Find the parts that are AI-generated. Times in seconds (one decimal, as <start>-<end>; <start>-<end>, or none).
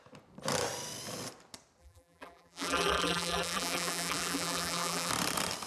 1.8-5.1